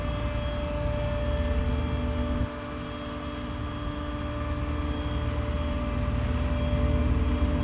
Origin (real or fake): real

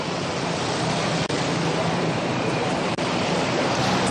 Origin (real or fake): fake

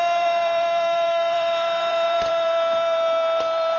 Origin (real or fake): fake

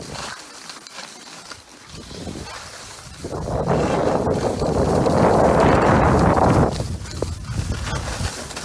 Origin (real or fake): real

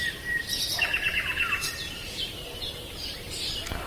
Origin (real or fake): fake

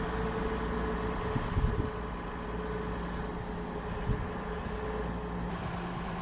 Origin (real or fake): real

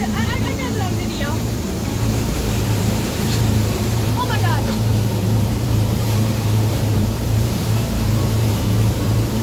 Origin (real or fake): fake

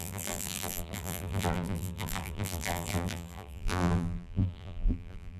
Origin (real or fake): fake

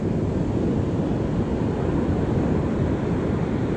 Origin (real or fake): real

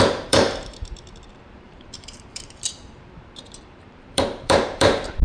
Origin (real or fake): fake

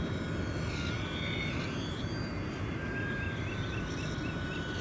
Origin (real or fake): real